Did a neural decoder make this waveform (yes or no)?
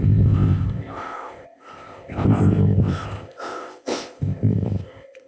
yes